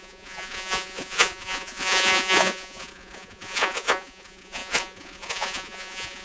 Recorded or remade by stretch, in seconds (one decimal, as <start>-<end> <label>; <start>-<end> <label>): 0.0-6.2 remade